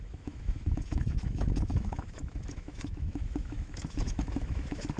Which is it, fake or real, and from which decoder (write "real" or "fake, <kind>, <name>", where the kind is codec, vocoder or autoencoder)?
fake, autoencoder, DAC-VAE